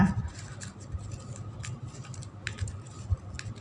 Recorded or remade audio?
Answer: recorded